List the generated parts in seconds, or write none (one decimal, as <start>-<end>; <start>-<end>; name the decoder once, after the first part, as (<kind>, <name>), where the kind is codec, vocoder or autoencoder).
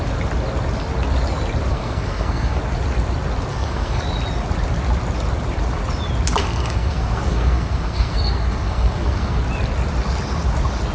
1.7-2.6 (codec, SNAC); 3.5-4.0; 6.4-9.4